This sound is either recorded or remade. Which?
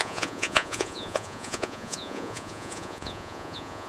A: remade